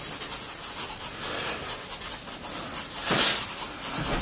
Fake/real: real